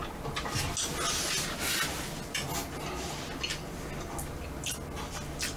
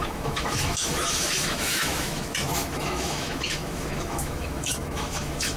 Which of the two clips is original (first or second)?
first